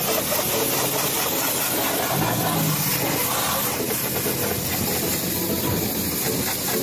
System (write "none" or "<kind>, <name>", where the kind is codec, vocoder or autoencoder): none